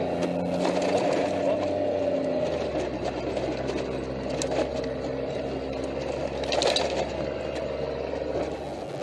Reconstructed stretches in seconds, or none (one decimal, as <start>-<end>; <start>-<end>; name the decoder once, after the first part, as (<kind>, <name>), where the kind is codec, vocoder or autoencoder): 4.7-5.4 (vocoder, BigVGAN v2)